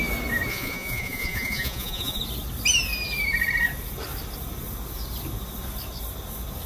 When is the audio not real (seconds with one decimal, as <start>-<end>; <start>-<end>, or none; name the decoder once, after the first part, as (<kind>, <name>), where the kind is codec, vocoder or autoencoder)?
0.5-2.2 (vocoder, Vocos)